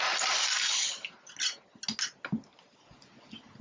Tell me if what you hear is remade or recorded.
recorded